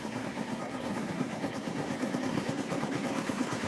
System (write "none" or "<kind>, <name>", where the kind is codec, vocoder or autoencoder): codec, SNAC